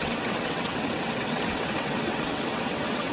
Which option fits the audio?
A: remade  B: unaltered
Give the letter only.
A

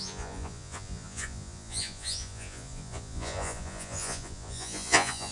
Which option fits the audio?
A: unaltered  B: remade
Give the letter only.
B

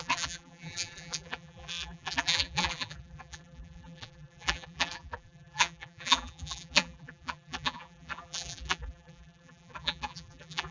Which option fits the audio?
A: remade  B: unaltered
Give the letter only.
A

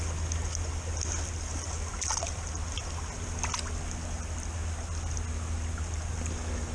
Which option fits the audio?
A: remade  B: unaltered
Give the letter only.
B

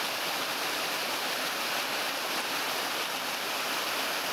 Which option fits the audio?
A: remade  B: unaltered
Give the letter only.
B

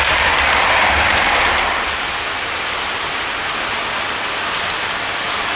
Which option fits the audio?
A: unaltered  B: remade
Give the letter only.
A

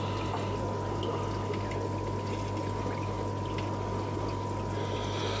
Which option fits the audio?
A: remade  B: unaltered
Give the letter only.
B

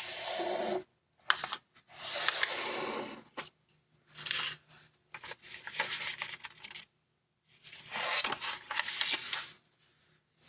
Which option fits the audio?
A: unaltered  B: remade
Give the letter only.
A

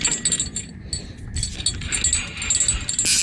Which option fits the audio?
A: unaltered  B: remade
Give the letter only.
A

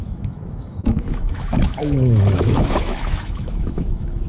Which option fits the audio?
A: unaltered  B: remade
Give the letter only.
B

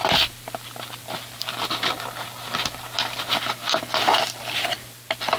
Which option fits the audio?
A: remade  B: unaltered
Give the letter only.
A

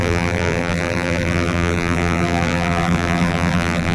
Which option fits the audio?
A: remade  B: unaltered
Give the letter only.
A